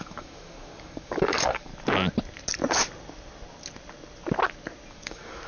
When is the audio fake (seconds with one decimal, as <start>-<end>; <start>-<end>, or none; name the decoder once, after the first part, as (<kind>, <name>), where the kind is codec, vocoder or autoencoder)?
0.0-1.7 (codec, DAC); 4.9-5.5